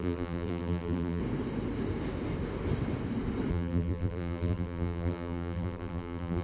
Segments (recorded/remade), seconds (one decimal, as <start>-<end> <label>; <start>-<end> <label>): 0.0-1.2 remade; 1.2-3.5 recorded; 3.5-6.4 remade